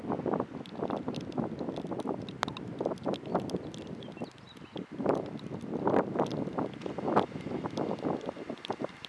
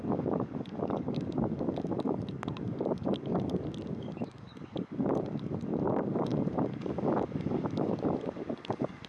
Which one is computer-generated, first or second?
second